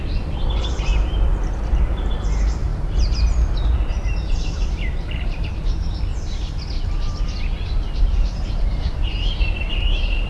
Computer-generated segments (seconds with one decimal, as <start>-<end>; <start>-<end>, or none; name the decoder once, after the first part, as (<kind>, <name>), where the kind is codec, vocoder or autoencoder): 0.0-6.1 (vocoder, BigVGAN v2); 8.0-10.3